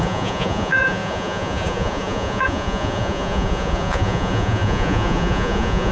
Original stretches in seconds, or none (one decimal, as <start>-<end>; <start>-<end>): none